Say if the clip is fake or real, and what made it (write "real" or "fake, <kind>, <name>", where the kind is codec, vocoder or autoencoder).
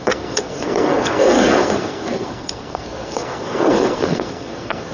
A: fake, codec, SNAC